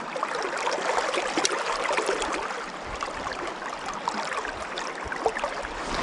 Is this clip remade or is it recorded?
recorded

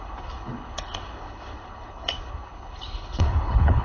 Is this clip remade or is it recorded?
remade